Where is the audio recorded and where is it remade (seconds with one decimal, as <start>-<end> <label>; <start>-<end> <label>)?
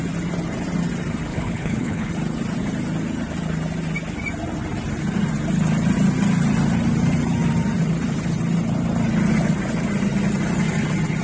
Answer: 0.0-1.3 recorded; 1.3-2.1 remade; 2.1-11.2 recorded